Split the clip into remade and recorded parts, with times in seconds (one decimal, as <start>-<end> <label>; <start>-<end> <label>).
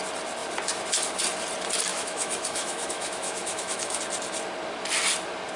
0.0-1.9 recorded; 1.9-4.0 remade; 4.0-5.6 recorded